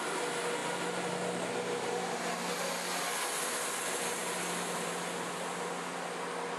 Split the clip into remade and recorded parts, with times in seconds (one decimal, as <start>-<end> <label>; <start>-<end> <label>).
0.0-6.6 recorded